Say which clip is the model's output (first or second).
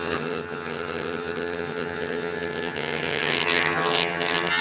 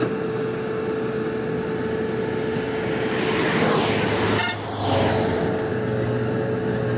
first